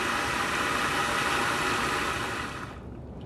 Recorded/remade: recorded